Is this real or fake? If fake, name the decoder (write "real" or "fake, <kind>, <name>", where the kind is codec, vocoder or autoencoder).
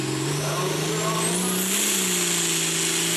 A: real